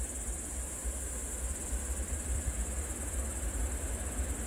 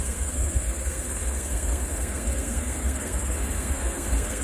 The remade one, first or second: second